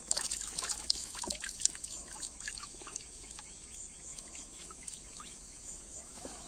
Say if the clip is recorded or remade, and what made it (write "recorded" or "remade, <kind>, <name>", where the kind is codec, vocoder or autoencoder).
remade, autoencoder, DAC-VAE